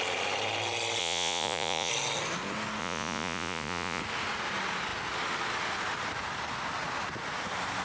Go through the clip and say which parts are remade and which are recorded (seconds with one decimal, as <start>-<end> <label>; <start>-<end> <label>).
0.0-1.0 recorded; 1.0-1.9 remade; 1.9-2.8 recorded; 2.8-4.0 remade; 4.0-7.8 recorded